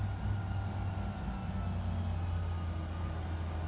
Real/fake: real